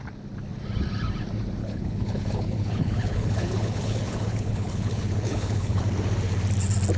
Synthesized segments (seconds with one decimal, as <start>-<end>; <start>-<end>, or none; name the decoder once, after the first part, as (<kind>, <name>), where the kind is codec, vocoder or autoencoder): 1.6-5.8 (codec, HILCodec)